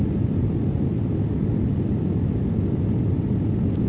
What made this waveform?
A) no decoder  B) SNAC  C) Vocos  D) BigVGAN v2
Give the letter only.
A